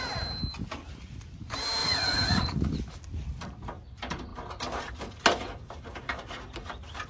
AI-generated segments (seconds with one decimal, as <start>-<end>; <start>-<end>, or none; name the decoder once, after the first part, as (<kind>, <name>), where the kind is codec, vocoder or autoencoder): 1.8-2.7 (vocoder, Vocos)